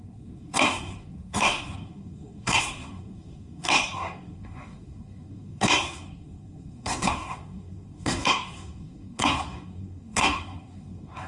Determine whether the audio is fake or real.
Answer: fake